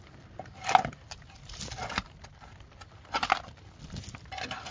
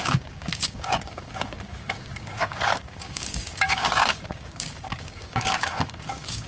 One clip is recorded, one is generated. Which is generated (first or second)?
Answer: second